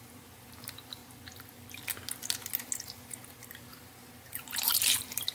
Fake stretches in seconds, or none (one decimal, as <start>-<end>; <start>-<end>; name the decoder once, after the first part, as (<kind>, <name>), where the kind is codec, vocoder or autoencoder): 0.0-1.0 (vocoder, BigVGAN v2); 3.7-5.3